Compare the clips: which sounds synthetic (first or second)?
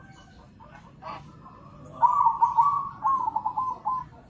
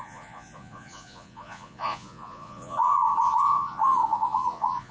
second